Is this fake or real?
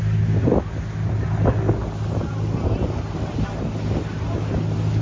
real